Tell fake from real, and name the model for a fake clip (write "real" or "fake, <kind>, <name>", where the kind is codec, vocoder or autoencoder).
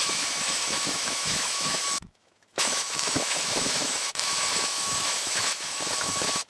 fake, autoencoder, DAC-VAE